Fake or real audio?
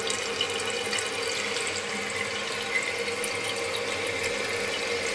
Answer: real